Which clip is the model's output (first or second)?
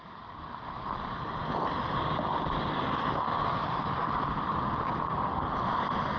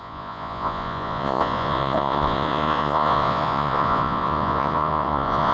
second